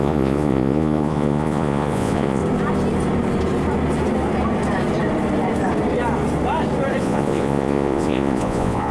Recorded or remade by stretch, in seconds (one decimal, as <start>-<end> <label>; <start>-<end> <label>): 0.0-2.4 remade; 2.4-7.0 recorded; 7.0-8.9 remade